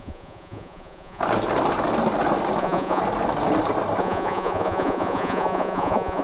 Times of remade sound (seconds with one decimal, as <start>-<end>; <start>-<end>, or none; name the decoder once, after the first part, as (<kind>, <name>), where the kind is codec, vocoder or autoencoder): 0.0-1.2 (vocoder, Vocos); 2.6-3.0; 4.0-6.2